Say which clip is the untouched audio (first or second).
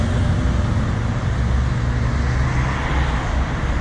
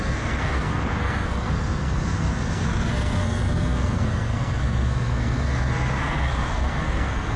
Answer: first